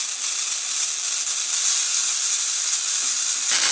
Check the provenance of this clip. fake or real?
real